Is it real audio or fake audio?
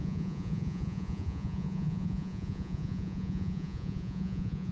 fake